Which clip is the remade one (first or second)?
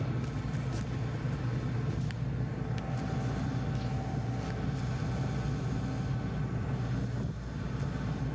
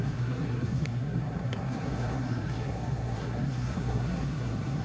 second